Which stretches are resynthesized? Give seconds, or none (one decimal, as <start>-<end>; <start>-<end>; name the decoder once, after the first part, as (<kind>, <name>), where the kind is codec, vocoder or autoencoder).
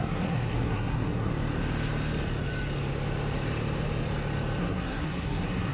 0.0-1.3 (codec, SNAC); 4.6-5.7